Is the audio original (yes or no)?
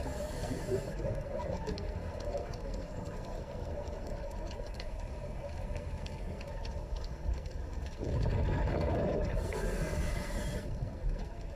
no